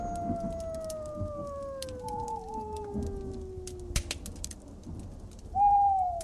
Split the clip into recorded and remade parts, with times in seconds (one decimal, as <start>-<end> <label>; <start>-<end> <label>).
0.0-6.2 recorded